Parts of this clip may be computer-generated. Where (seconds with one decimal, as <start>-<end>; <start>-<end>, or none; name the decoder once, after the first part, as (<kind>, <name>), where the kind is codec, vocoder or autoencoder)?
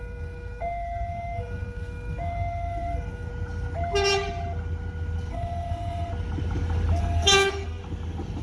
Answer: 0.0-3.3 (codec, SNAC); 5.3-6.1; 7.0-7.8